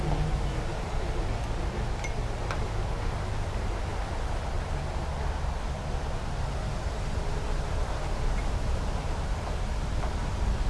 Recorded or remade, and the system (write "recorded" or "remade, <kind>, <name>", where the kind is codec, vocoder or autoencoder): recorded